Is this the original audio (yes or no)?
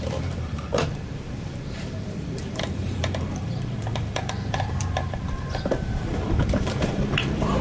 no